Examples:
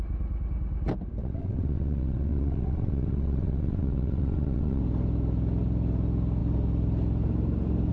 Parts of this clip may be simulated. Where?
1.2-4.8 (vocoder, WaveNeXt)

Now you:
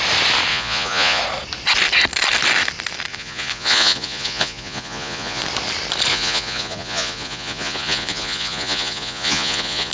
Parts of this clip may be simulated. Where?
0.5-1.2 (vocoder, Vocos); 3.1-5.4; 6.1-9.9

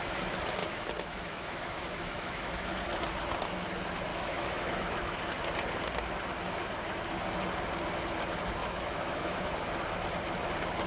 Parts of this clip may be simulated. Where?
0.6-2.7 (autoencoder, DAC-VAE); 4.1-5.2; 8.6-9.5

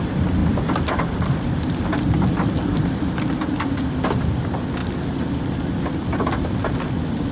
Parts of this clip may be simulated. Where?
0.0-4.8 (vocoder, BigVGAN v2); 5.9-7.3

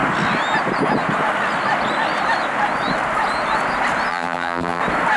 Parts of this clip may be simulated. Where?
4.1-4.8 (vocoder, BigVGAN v2)

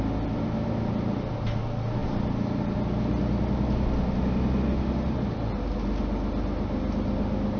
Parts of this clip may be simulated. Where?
none

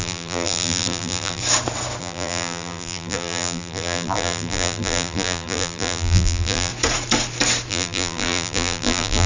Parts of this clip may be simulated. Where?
0.0-1.4 (vocoder, BigVGAN v2); 2.0-6.7; 7.7-9.3

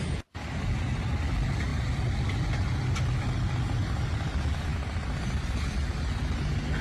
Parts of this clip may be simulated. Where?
none